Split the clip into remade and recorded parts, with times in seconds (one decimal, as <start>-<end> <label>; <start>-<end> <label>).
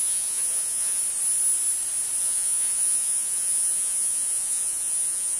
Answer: 0.0-1.0 remade; 1.0-2.2 recorded; 2.2-5.4 remade